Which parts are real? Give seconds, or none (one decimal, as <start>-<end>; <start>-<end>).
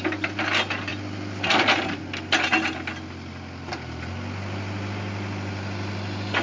0.0-6.4